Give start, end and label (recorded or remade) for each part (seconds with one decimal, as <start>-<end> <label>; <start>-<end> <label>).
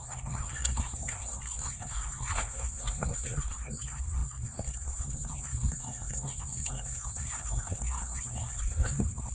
0.0-9.3 remade